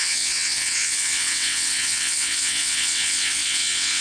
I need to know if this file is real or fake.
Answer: fake